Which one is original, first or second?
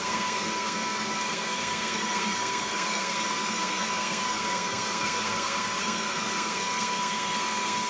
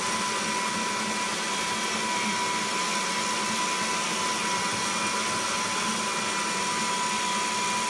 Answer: second